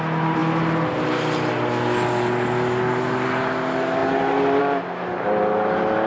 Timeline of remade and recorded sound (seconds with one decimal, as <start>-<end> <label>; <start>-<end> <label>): 0.0-6.1 recorded